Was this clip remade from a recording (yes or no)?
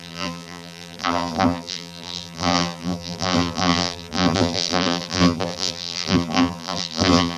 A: yes